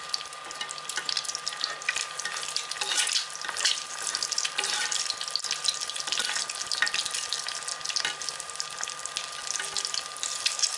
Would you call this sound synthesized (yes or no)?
no